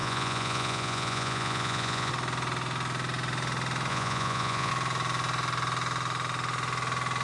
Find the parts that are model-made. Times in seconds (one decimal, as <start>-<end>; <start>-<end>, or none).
0.0-2.1; 3.9-4.7

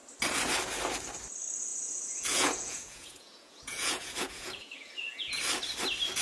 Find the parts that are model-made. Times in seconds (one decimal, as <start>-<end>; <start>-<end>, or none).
1.7-5.4

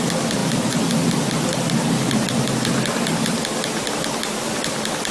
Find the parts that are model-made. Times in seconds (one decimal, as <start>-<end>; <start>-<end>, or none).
none